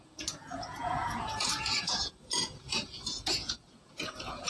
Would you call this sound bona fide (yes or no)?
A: no